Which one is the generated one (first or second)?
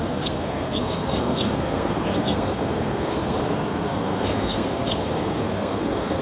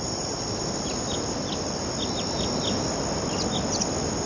first